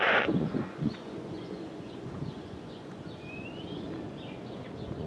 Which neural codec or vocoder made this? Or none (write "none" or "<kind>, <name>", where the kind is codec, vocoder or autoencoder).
vocoder, Vocos